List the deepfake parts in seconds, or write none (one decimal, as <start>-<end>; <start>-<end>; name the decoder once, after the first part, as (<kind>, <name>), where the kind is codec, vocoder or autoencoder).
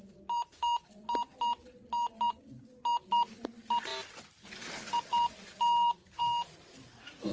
none